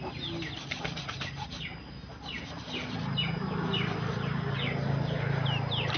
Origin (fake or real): real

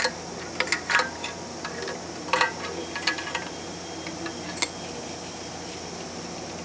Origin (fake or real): real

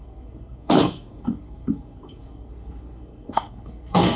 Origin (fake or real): fake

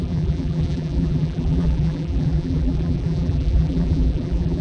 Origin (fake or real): fake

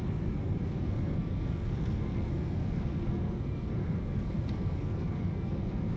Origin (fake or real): fake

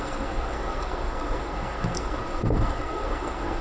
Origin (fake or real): fake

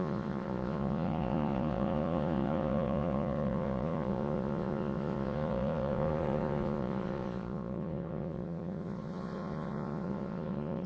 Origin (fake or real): fake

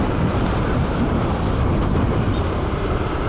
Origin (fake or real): fake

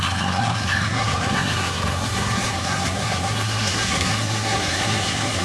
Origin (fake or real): fake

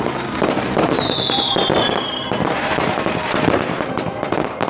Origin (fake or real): fake